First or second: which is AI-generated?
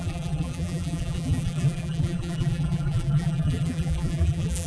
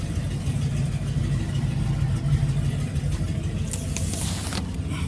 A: first